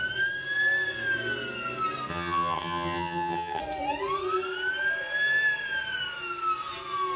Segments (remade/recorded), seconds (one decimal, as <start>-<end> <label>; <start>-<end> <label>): 0.0-2.1 recorded; 2.1-3.6 remade; 3.6-7.2 recorded